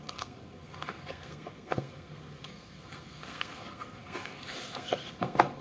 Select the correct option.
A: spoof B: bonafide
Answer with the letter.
A